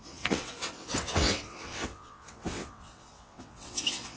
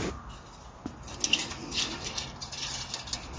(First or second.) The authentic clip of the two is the second